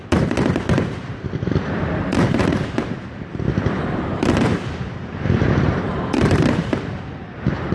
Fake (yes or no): yes